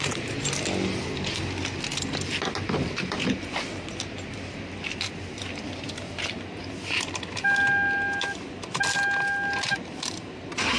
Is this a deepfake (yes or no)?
no